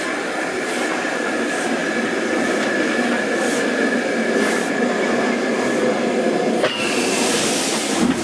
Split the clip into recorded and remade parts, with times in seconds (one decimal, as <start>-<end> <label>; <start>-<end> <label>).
0.0-8.2 recorded